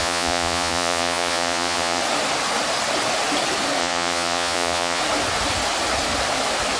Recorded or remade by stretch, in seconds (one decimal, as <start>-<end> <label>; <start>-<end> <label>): 0.0-2.0 remade; 2.0-3.8 recorded; 3.8-5.0 remade; 5.0-6.8 recorded